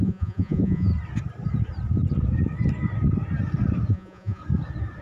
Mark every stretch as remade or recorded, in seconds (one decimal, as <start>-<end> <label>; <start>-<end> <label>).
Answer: 0.0-0.9 remade; 0.9-3.9 recorded; 3.9-4.4 remade; 4.4-5.0 recorded